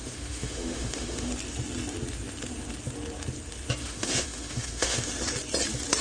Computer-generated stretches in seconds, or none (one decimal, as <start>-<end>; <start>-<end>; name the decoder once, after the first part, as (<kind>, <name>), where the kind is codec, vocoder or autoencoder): 0.0-1.3 (autoencoder, DAC-VAE); 3.8-5.1